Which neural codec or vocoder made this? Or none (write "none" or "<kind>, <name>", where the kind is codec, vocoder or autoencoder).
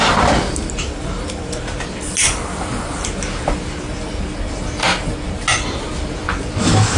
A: none